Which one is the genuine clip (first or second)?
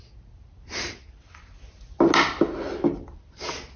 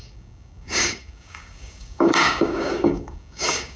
first